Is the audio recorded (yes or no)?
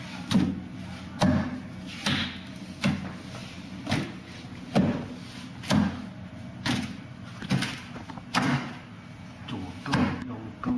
yes